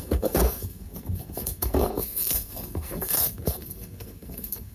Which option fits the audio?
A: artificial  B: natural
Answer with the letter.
A